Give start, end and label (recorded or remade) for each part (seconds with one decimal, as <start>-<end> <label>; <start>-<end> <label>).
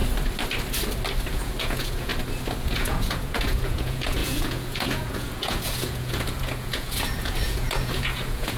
0.0-1.3 recorded; 1.3-2.1 remade; 2.1-2.6 recorded; 2.6-8.6 remade